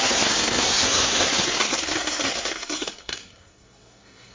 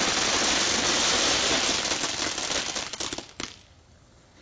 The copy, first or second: first